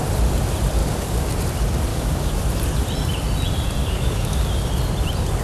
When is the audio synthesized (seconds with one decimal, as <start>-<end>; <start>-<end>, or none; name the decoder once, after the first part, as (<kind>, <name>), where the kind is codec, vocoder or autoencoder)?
0.8-1.3 (codec, DAC); 1.9-2.4; 3.8-4.4